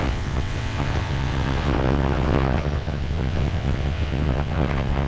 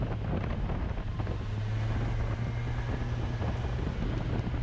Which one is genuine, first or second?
second